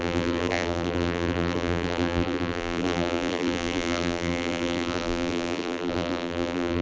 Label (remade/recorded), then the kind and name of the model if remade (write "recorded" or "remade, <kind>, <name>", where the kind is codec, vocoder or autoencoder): remade, vocoder, BigVGAN v2